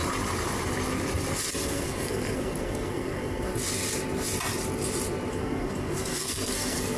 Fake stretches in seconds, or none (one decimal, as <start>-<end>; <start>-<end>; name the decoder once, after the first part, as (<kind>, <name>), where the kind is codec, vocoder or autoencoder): 1.4-3.5 (codec, SNAC); 5.3-7.0